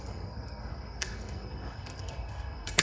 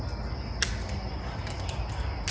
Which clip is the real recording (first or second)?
second